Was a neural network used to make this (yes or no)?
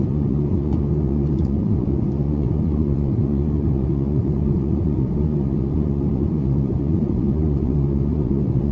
yes